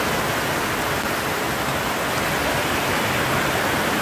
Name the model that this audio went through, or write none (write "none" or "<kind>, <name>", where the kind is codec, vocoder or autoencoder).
none